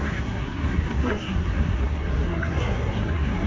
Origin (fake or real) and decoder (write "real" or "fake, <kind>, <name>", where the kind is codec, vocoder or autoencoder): fake, codec, SNAC